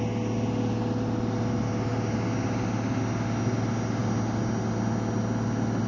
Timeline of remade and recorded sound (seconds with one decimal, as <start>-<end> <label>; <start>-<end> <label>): 0.0-5.9 recorded